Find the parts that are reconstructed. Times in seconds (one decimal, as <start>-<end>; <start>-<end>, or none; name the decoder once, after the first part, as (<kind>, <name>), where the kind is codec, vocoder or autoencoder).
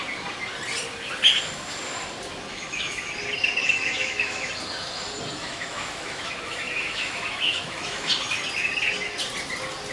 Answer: 2.5-3.1 (autoencoder, DAC-VAE); 3.6-4.5; 5.4-8.1